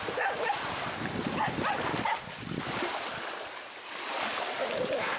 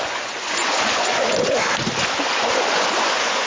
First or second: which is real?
first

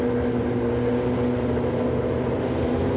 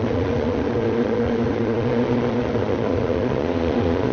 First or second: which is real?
first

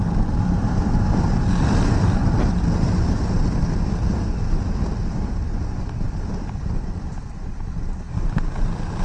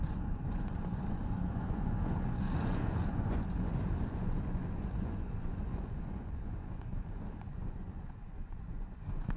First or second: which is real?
first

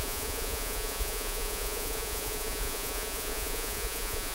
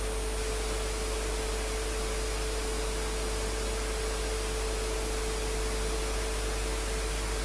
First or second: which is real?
second